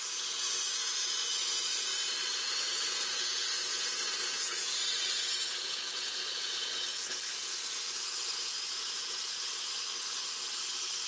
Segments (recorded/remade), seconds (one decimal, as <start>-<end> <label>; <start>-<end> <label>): 0.0-1.9 remade; 1.9-2.4 recorded; 2.4-9.5 remade; 9.5-11.1 recorded

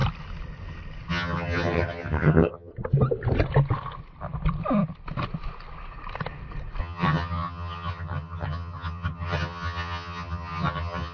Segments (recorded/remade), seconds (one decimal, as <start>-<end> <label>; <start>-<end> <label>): 0.0-1.1 recorded; 1.1-2.7 remade; 2.7-6.8 recorded; 6.8-11.1 remade

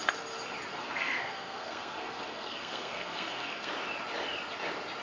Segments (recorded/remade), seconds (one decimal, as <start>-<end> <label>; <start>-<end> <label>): 0.0-0.7 recorded; 0.7-3.7 remade; 3.7-5.0 recorded

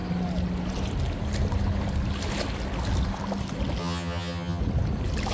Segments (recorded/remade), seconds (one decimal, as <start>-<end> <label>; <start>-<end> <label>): 0.0-3.8 recorded; 3.8-4.6 remade; 4.6-5.3 recorded